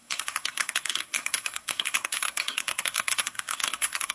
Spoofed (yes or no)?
yes